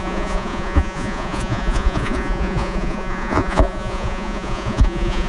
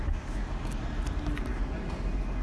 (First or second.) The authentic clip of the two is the second